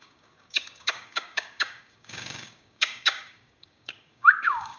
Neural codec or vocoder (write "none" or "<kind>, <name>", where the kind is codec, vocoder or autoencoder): codec, DAC